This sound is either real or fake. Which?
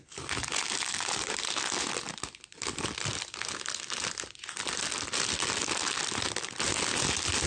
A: real